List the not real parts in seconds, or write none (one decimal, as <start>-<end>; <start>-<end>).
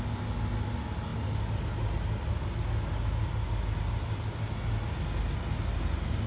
none